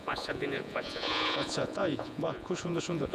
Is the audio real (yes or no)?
no